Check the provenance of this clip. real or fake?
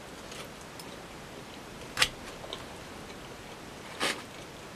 real